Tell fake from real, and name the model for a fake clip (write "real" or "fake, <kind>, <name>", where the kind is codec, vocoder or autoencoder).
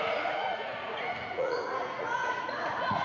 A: fake, vocoder, Vocos